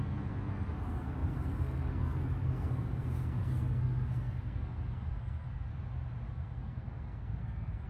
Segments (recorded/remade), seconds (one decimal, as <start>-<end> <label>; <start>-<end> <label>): 0.0-5.7 remade; 5.7-6.3 recorded; 6.3-7.9 remade